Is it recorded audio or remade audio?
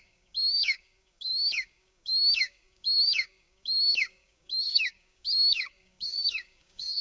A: remade